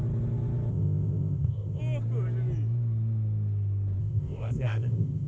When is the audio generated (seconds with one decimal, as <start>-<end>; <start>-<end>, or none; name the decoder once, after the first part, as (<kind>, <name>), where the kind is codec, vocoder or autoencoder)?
0.7-1.8 (codec, ZipCodec); 4.0-5.3